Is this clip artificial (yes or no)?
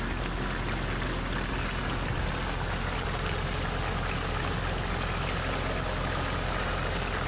no